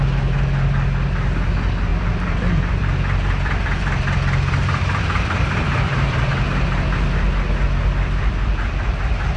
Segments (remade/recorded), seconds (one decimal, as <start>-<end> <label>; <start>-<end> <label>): 0.0-1.9 recorded; 1.9-6.3 remade; 6.3-9.4 recorded

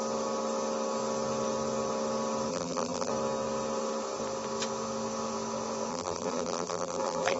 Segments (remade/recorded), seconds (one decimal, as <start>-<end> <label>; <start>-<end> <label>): 0.0-2.5 recorded; 2.5-3.1 remade; 3.1-5.9 recorded; 5.9-7.4 remade

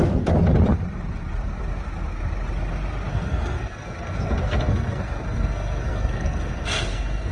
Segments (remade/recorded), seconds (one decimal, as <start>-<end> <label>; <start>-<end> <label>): 0.0-3.1 recorded; 3.1-7.3 remade

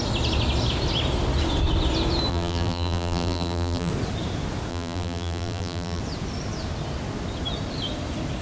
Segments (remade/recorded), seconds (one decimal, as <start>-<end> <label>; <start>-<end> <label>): 0.0-2.3 recorded; 2.3-3.9 remade; 3.9-4.7 recorded; 4.7-6.0 remade; 6.0-8.4 recorded